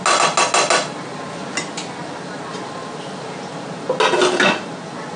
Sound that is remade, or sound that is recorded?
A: recorded